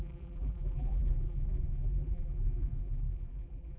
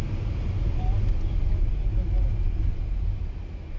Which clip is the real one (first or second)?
second